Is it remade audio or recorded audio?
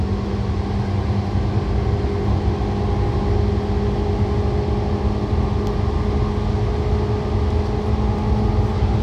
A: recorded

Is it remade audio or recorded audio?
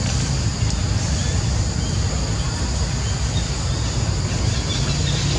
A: recorded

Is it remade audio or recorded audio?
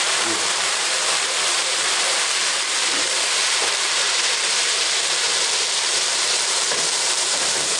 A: remade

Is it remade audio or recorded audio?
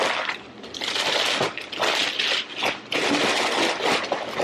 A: recorded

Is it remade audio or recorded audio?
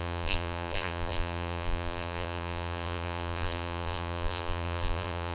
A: remade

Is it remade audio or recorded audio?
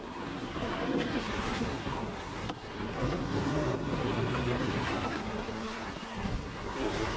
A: remade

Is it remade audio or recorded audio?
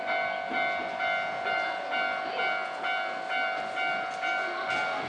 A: recorded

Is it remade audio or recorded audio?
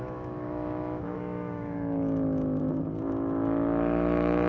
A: remade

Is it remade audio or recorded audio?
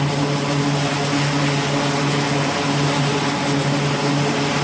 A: recorded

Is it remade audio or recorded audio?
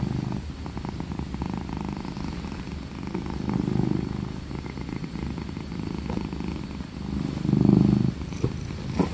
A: recorded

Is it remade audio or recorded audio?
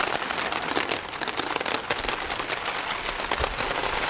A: recorded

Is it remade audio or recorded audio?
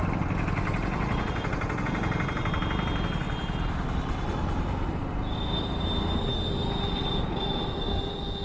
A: recorded